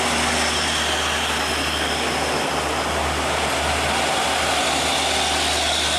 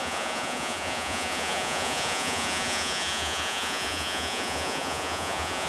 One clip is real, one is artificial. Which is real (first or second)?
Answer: first